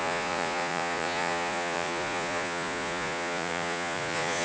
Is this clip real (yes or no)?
no